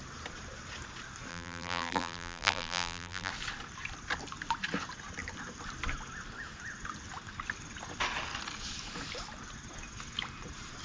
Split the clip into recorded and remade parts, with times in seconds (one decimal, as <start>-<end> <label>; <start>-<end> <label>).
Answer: 0.0-1.3 recorded; 1.3-3.3 remade; 3.3-10.8 recorded